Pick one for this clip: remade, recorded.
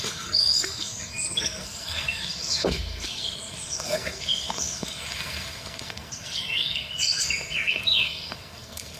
remade